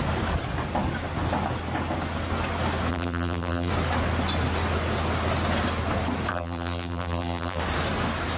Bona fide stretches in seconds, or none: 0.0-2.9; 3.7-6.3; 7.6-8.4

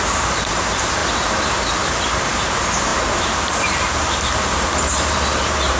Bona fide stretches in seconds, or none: 1.0-2.0

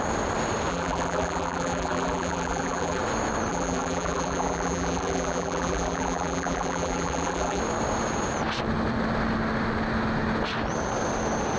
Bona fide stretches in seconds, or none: 0.0-0.7; 3.0-3.5; 7.6-11.6

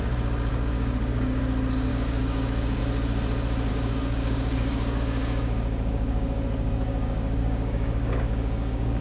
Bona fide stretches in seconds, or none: 0.0-0.5; 1.4-1.9; 2.8-3.7

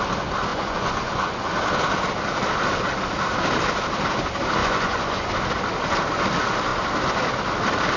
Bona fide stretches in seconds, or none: 0.0-0.5; 1.5-4.6; 5.3-8.0